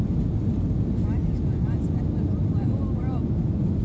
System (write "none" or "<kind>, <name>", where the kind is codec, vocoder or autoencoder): none